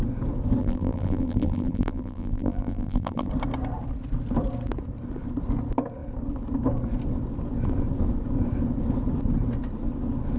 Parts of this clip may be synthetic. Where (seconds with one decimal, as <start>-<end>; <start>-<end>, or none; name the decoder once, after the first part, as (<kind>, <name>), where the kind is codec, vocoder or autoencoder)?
0.6-3.3 (vocoder, BigVGAN v2)